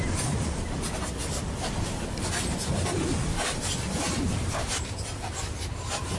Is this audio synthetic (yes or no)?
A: no